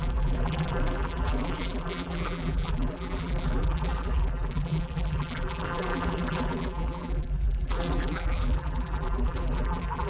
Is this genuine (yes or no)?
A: no